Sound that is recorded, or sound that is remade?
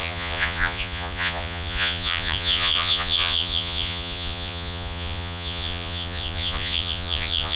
remade